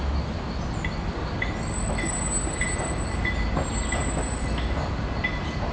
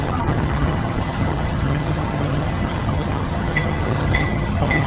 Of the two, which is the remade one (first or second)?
second